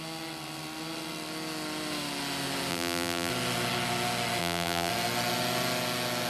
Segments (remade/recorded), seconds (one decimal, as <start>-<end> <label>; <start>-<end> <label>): 0.0-2.7 recorded; 2.7-3.3 remade; 3.3-4.4 recorded; 4.4-4.9 remade; 4.9-6.3 recorded

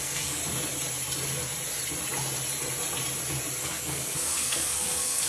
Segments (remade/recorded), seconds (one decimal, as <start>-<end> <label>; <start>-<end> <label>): 0.0-0.4 remade; 0.4-3.6 recorded; 3.6-5.3 remade

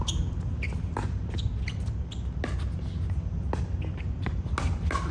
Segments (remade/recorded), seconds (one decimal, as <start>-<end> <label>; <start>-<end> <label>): 0.0-5.1 recorded

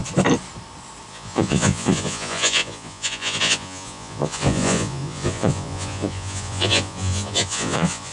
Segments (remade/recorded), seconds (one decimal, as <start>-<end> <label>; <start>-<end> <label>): 0.0-1.1 recorded; 1.1-8.1 remade

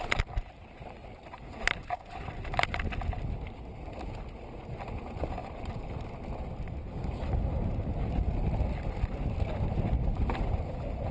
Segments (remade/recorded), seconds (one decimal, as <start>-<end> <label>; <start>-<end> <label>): 0.0-11.1 recorded

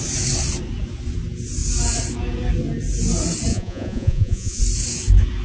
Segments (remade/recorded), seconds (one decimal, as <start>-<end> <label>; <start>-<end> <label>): 0.0-3.5 recorded; 3.5-4.6 remade; 4.6-5.4 recorded

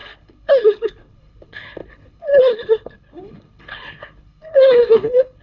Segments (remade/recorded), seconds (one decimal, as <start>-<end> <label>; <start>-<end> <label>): 0.0-5.4 remade